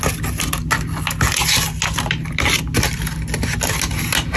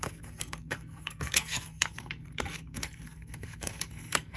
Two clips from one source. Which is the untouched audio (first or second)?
first